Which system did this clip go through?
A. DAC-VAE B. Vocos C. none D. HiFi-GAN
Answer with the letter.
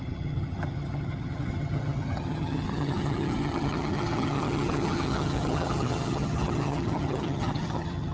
D